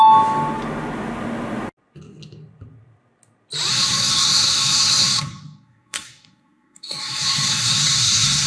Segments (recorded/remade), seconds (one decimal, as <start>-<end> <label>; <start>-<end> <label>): 0.0-3.7 recorded; 3.7-8.5 remade